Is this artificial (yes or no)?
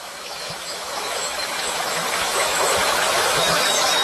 yes